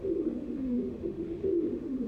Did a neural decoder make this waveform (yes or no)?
yes